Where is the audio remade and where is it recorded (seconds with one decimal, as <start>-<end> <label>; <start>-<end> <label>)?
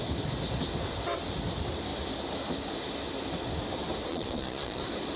0.0-4.1 recorded; 4.1-4.8 remade; 4.8-5.2 recorded